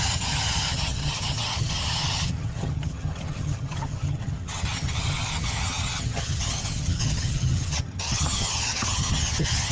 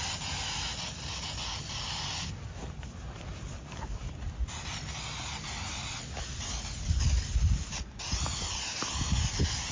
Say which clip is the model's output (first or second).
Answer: first